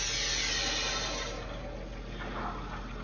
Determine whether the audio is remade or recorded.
recorded